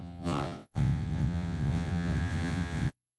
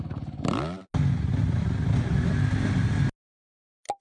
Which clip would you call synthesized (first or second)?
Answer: first